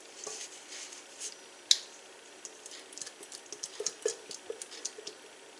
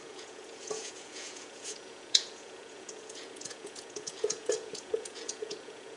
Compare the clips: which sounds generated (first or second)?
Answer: second